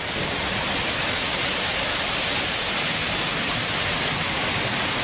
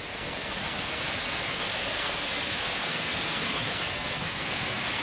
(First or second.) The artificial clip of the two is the second